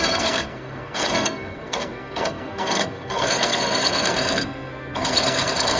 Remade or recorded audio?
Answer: remade